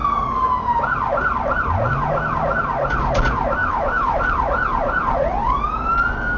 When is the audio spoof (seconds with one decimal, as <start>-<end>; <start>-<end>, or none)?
3.6-4.2